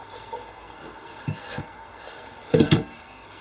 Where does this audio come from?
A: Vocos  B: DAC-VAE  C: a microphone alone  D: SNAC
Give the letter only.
D